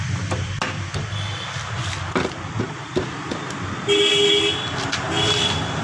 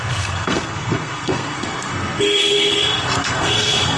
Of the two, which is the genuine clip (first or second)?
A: first